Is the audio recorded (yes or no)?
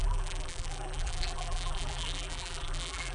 no